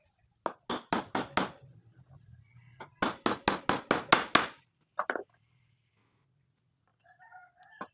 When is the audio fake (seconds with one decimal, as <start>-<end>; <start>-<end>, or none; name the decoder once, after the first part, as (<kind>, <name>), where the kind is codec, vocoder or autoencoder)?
none